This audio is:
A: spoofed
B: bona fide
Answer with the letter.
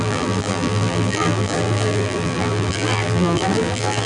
A